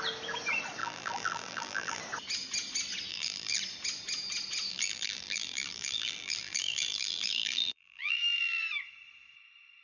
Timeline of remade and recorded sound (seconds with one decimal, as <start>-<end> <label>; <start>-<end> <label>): 0.0-0.8 recorded; 0.8-2.0 remade; 2.0-3.1 recorded; 3.1-3.6 remade; 3.6-4.7 recorded; 4.7-8.6 remade; 8.6-9.8 recorded